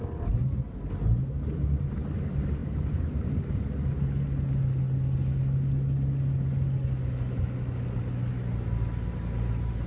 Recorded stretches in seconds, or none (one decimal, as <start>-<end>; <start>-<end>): 0.0-2.6; 4.1-9.9